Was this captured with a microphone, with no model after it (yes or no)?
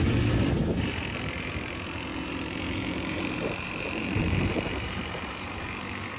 no